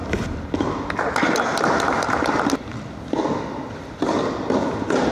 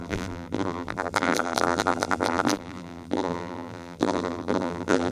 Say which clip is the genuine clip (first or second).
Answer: first